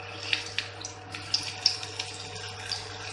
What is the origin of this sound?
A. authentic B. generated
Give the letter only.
A